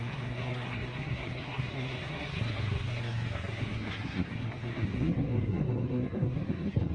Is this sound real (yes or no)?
no